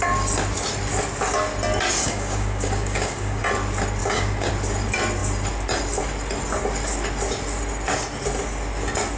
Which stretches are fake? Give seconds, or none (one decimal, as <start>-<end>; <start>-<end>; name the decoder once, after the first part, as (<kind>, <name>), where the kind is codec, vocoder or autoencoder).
2.0-3.4 (codec, DAC); 4.0-4.5